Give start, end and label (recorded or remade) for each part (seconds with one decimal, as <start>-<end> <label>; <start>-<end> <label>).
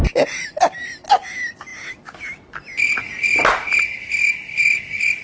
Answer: 0.0-5.2 recorded